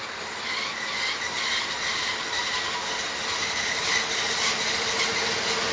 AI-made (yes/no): no